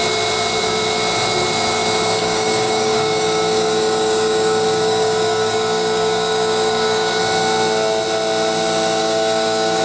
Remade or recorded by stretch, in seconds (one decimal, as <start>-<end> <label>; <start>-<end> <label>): 0.0-2.2 recorded; 2.2-7.2 remade; 7.2-9.0 recorded; 9.0-9.8 remade

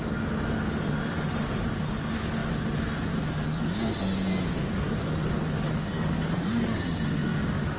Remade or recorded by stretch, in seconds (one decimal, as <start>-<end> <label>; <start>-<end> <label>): 0.0-7.8 recorded

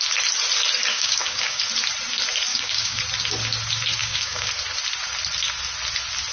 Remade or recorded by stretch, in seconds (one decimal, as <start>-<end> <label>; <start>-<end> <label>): 0.0-0.9 recorded; 0.9-1.6 remade; 1.6-2.5 recorded; 2.5-3.0 remade; 3.0-4.0 recorded; 4.0-4.5 remade; 4.5-6.3 recorded

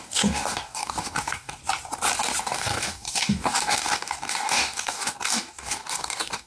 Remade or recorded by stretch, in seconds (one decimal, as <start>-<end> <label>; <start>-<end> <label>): 0.0-1.6 remade; 1.6-2.4 recorded; 2.4-6.5 remade

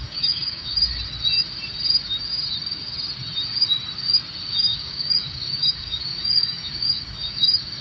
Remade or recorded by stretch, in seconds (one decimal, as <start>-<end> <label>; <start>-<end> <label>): 0.0-0.8 remade; 0.8-4.5 recorded; 4.5-7.8 remade